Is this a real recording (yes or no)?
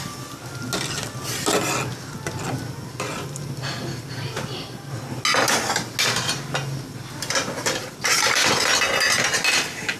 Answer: yes